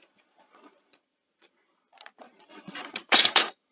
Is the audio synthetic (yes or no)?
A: yes